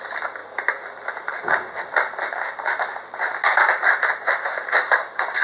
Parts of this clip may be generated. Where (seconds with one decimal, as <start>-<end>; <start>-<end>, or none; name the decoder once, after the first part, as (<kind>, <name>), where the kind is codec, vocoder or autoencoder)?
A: none